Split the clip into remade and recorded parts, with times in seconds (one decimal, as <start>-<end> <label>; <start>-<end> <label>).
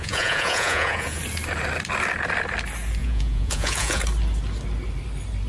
0.0-1.2 remade; 1.2-3.0 recorded; 3.0-4.0 remade; 4.0-5.5 recorded